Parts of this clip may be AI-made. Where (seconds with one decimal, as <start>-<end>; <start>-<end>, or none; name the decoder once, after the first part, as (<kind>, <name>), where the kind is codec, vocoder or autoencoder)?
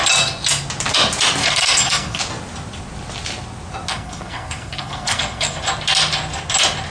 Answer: 1.4-2.2 (codec, SNAC); 3.9-5.6